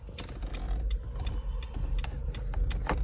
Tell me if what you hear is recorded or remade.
recorded